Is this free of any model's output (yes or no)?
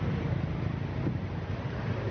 no